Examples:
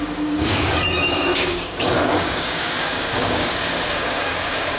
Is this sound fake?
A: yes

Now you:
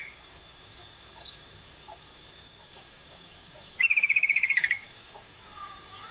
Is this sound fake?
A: yes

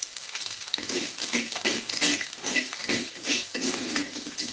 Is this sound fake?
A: yes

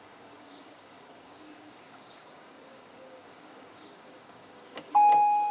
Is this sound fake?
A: yes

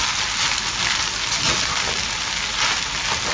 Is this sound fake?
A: no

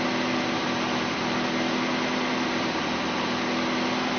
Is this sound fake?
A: no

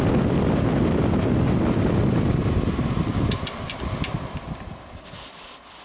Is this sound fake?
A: no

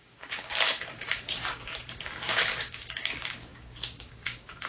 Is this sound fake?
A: yes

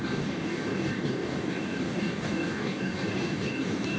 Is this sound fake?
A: yes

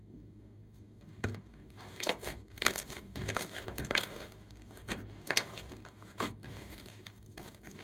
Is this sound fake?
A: yes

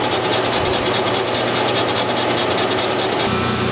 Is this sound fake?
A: no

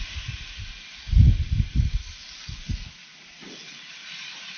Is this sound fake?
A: no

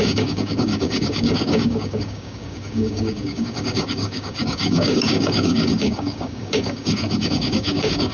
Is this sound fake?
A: yes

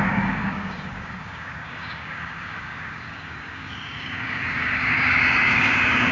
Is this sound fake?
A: yes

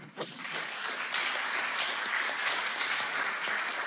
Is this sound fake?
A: yes